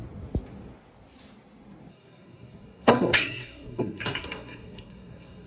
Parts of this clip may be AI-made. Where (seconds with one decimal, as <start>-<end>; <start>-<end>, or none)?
1.9-5.5